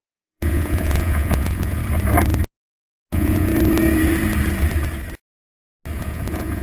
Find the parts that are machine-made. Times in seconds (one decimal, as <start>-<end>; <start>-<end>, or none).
0.0-1.8; 3.1-3.5; 6.0-6.6